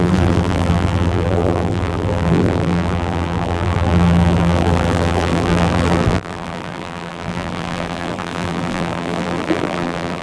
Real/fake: fake